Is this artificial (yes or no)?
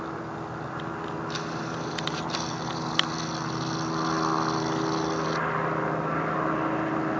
no